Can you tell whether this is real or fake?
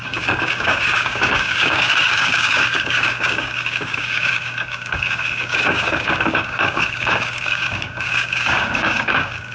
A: fake